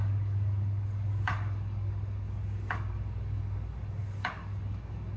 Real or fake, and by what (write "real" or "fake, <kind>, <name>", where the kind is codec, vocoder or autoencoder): fake, codec, DAC